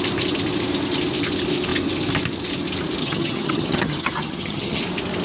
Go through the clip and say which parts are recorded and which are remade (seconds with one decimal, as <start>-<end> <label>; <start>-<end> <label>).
0.0-3.0 recorded; 3.0-4.8 remade; 4.8-5.2 recorded